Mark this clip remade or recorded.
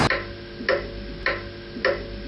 recorded